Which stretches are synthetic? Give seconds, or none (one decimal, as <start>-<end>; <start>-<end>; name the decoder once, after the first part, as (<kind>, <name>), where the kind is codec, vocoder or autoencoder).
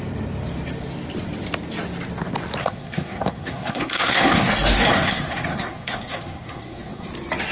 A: 2.6-7.1 (codec, SNAC)